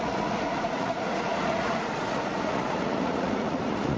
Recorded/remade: remade